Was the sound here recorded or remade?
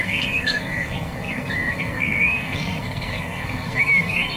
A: remade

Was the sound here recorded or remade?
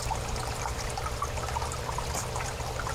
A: recorded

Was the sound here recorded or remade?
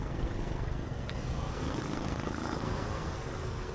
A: remade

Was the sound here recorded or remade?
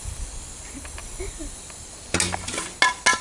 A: recorded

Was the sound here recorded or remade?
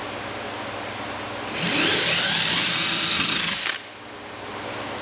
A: recorded